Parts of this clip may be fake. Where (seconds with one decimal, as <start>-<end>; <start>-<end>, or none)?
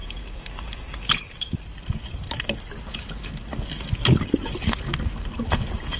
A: 0.0-1.6